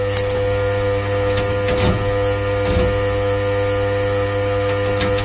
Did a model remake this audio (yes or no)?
no